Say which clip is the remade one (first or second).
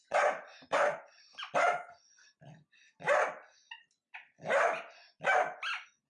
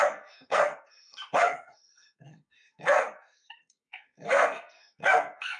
second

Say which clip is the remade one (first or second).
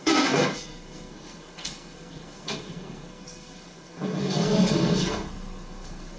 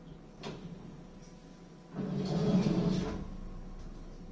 first